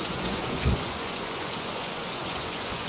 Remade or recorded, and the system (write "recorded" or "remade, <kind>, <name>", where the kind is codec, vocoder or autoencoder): remade, vocoder, Vocos